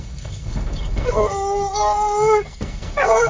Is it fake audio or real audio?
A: fake